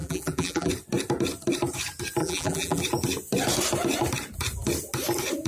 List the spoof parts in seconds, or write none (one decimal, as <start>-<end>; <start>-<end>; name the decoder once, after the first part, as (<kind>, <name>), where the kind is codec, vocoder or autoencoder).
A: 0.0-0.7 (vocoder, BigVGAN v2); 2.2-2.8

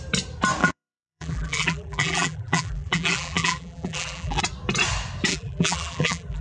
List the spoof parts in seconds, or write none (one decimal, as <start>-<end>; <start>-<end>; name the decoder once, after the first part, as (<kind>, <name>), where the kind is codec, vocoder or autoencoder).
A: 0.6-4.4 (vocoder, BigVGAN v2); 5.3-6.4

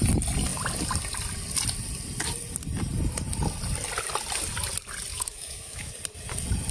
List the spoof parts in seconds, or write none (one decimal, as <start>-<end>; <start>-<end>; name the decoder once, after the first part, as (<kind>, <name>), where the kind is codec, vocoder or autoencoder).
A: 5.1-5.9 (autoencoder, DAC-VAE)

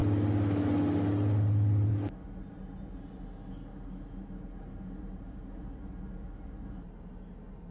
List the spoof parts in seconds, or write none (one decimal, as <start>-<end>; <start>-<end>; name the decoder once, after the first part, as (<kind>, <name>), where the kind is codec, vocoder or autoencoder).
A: none

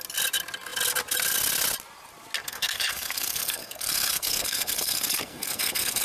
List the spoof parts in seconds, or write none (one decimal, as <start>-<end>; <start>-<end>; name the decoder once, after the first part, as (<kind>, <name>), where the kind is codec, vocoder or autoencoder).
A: 2.4-6.0 (codec, SNAC)

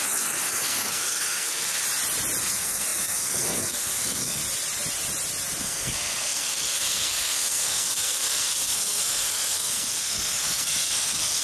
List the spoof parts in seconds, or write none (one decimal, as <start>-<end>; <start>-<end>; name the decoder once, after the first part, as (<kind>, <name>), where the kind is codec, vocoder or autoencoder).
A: 0.0-1.8 (codec, SNAC); 2.4-4.4; 5.6-11.4